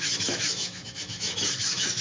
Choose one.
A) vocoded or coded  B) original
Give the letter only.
A